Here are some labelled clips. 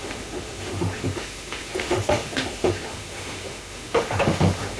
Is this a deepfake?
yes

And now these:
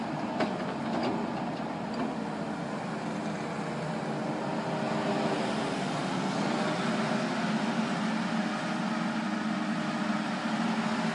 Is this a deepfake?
no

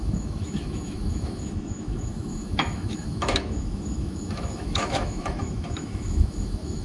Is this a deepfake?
yes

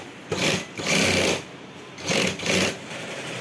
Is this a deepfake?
no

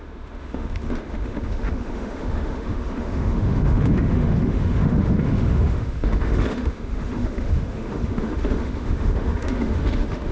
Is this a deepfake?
yes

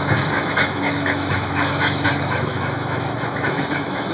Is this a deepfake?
yes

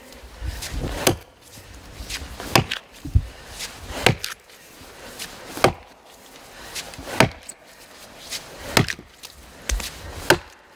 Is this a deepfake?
no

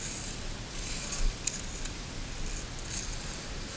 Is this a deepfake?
no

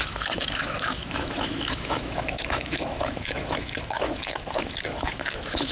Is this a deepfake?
yes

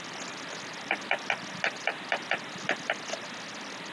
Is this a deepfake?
no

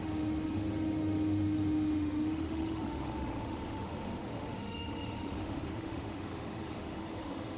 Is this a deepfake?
yes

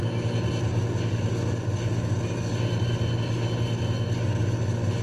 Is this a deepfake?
no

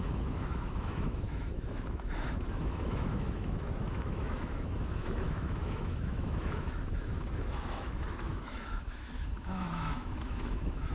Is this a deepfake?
yes